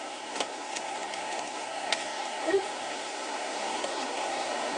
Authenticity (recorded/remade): remade